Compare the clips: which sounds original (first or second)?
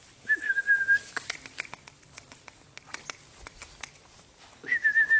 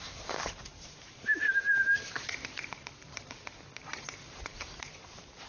first